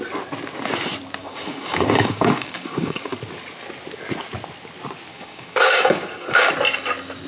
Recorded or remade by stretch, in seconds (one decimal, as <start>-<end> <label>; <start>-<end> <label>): 0.0-1.2 recorded; 1.2-3.1 remade; 3.1-5.1 recorded; 5.1-6.5 remade; 6.5-7.3 recorded